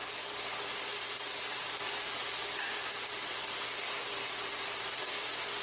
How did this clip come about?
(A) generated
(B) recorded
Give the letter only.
B